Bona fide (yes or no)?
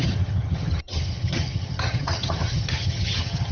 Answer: no